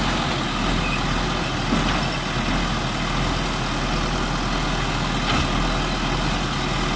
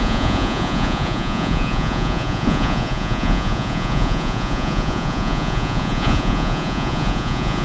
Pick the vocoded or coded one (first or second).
second